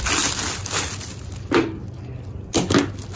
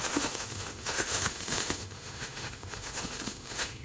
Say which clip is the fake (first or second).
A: second